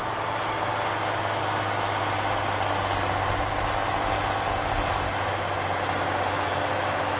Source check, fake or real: real